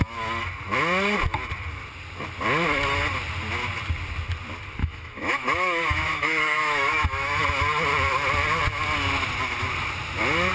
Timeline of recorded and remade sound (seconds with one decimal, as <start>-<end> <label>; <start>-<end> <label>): 0.0-4.8 recorded; 4.8-7.4 remade; 7.4-10.5 recorded